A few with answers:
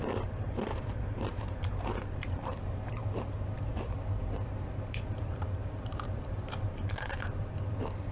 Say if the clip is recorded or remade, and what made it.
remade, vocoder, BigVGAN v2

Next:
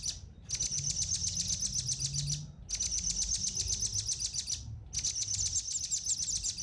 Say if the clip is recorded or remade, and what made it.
recorded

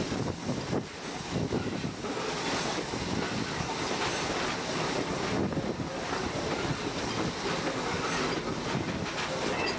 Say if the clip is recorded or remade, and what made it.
recorded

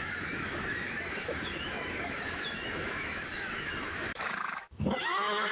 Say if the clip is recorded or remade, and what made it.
remade, autoencoder, DAC-VAE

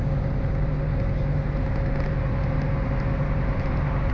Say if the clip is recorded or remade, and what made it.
recorded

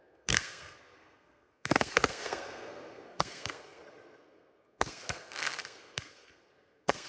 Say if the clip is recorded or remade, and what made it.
remade, codec, SNAC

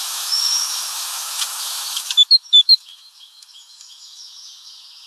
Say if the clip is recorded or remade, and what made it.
remade, autoencoder, DAC-VAE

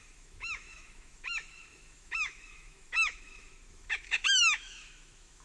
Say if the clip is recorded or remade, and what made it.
remade, autoencoder, DAC-VAE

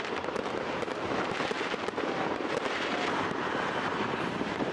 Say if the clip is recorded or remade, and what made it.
remade, vocoder, BigVGAN v2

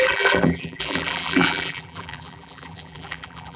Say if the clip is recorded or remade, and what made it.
remade, vocoder, BigVGAN v2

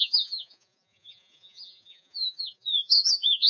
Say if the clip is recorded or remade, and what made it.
remade, vocoder, Vocos